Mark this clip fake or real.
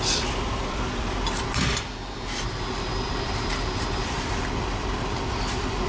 fake